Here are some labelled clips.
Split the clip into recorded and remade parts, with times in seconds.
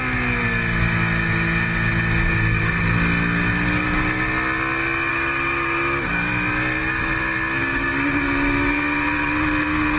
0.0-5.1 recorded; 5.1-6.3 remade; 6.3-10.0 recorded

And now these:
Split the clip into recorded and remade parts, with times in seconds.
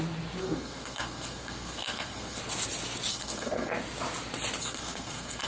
0.0-0.4 recorded; 0.4-2.4 remade; 2.4-3.1 recorded; 3.1-3.7 remade; 3.7-4.6 recorded; 4.6-5.5 remade